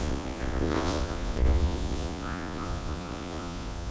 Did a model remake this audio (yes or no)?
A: yes